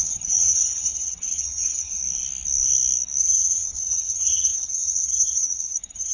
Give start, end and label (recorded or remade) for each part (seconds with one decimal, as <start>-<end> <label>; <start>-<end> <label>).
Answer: 0.0-2.0 remade; 2.0-3.2 recorded; 3.2-6.1 remade